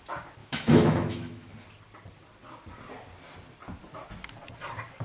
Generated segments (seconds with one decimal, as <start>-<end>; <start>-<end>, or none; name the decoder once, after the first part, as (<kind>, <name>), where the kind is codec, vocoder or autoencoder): 0.4-1.5 (autoencoder, DAC-VAE)